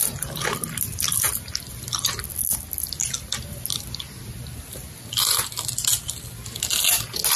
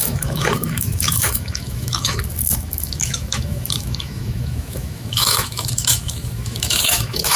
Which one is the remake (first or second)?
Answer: second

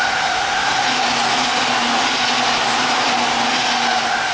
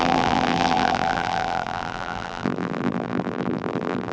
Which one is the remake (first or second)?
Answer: second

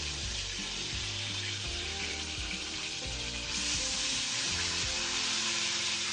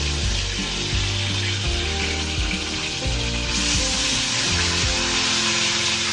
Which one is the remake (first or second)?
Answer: first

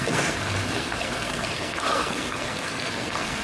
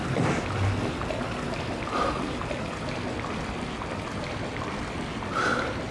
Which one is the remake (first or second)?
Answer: first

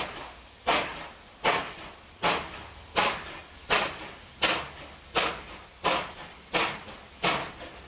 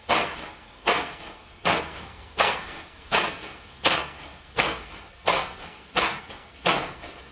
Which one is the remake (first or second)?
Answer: second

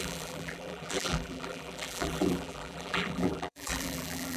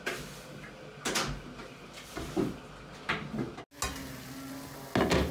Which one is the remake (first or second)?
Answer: first